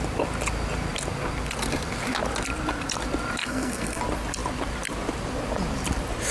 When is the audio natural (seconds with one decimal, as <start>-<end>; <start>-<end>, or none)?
0.0-3.4; 4.0-6.3

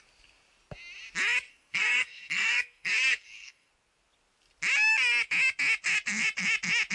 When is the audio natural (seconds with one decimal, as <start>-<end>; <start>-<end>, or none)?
0.0-1.5; 3.7-6.9